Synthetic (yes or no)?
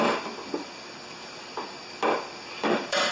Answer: no